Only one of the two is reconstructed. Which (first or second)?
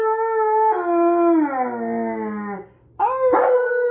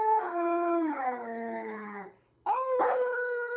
second